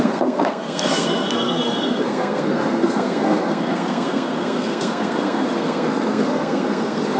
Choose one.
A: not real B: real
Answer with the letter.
A